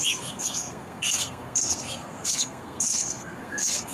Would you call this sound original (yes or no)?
no